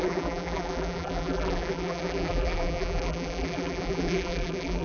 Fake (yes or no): yes